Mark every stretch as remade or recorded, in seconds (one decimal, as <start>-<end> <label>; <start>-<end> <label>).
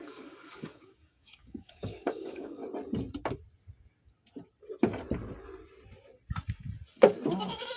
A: 0.0-2.6 remade; 2.6-7.3 recorded; 7.3-7.8 remade